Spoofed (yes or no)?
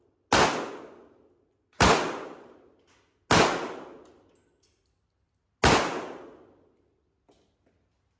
no